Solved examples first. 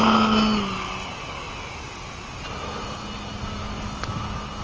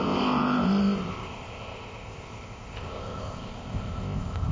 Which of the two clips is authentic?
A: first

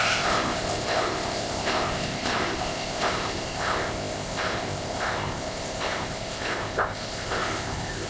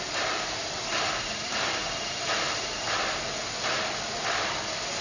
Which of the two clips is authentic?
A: second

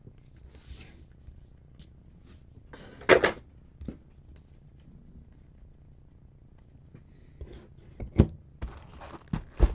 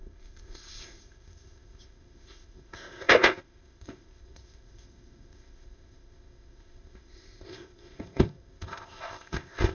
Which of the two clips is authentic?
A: first